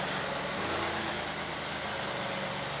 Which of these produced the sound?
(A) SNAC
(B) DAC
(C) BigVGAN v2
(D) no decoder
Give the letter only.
D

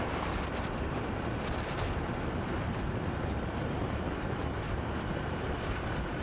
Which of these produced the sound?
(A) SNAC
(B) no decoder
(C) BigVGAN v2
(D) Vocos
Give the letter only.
C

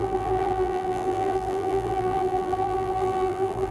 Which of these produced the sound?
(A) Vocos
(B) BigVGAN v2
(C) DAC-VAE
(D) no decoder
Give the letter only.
B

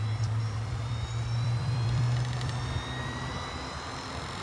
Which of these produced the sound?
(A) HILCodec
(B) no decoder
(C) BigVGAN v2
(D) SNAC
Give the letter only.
C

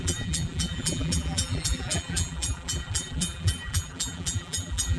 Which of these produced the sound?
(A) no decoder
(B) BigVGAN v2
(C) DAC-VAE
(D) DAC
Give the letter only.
B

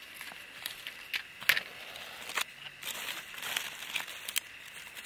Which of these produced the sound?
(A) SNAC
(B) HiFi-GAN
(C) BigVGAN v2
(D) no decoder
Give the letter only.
D